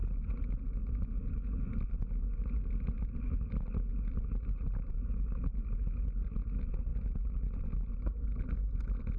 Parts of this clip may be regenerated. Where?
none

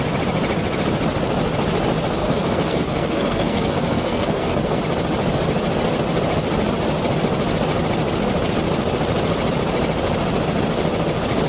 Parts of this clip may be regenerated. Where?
2.2-4.8

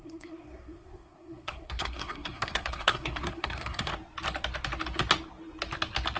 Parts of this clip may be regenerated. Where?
0.0-3.9

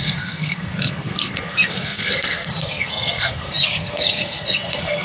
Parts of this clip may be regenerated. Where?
0.0-5.0

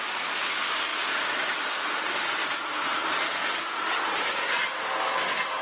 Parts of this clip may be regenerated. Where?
none

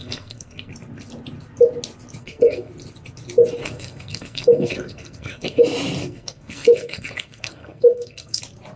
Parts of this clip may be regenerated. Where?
0.0-0.7; 2.2-2.7; 3.6-5.6; 6.0-8.4

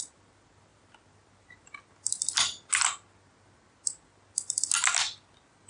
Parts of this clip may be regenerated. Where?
none